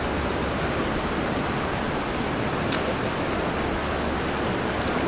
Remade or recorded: recorded